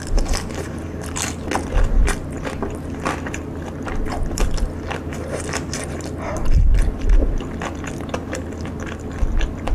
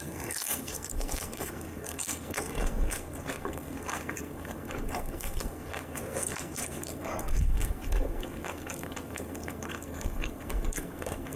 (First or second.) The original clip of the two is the first